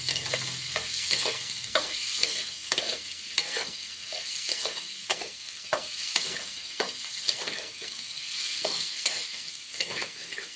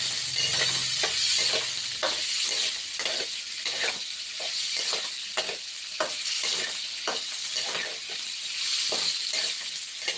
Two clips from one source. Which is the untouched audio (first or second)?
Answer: second